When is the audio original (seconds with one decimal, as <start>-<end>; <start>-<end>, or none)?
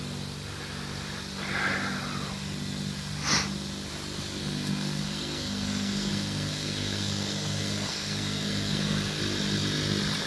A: 0.0-4.4; 9.2-10.3